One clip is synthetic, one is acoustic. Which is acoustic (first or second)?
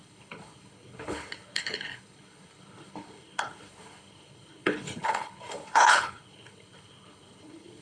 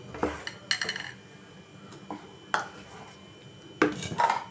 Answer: second